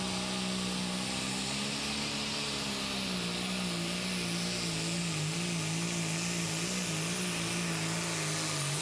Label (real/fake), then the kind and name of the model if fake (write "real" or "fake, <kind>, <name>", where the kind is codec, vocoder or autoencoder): real